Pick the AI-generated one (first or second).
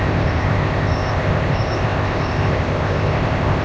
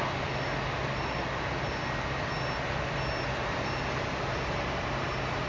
first